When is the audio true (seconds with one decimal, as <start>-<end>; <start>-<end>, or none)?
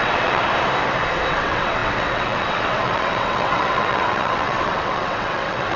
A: 0.4-1.3